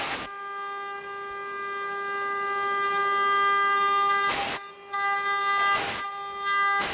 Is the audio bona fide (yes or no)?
yes